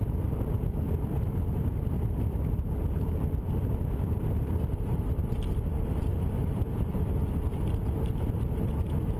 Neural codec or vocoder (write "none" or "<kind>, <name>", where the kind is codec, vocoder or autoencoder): none